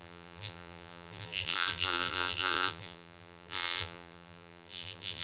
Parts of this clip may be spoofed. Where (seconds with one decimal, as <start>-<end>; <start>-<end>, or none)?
0.0-5.2